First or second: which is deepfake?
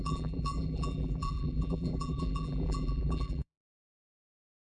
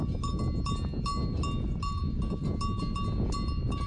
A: first